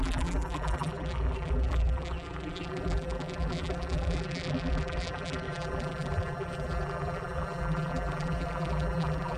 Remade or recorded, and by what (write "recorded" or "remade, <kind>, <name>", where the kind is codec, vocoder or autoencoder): remade, vocoder, BigVGAN v2